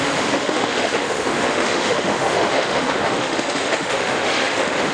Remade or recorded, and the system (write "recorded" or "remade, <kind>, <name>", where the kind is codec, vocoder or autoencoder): remade, autoencoder, DAC-VAE